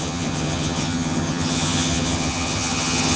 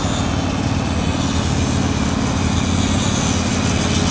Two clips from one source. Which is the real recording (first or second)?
second